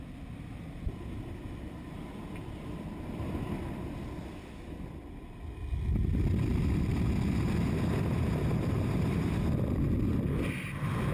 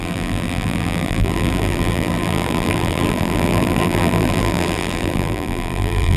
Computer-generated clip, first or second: second